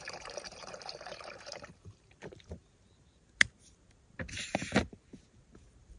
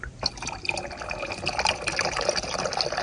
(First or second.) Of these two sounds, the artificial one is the first